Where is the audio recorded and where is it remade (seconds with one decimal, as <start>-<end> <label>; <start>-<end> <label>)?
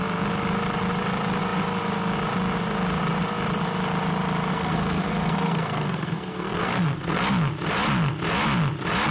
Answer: 0.0-4.5 recorded; 4.5-7.2 remade; 7.2-9.1 recorded